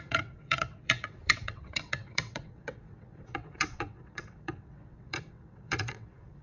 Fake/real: fake